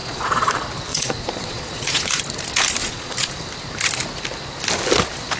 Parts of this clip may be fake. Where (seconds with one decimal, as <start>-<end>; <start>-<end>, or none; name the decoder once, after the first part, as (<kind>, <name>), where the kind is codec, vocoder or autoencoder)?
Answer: 0.0-0.5 (vocoder, Vocos); 0.9-2.2; 2.8-3.3